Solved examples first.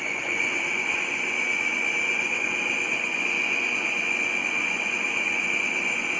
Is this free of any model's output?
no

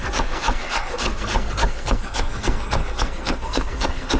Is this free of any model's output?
no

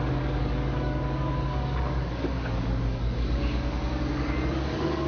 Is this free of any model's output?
no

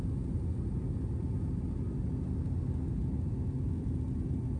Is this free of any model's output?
yes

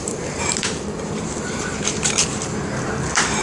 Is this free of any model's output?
no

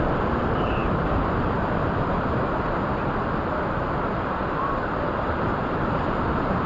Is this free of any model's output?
no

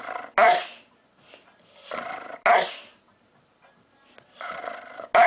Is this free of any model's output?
yes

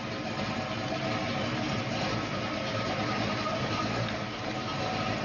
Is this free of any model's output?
yes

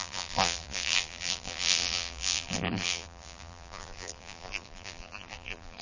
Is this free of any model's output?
no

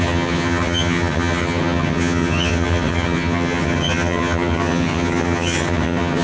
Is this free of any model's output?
no